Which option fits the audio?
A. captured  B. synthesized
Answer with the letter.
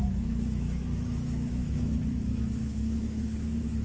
B